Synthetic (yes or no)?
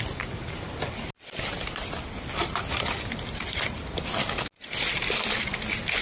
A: no